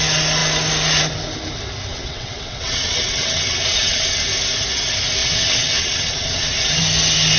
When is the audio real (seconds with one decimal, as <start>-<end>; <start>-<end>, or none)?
0.0-1.9; 4.2-5.2; 6.8-7.4